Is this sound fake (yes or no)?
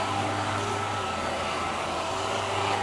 yes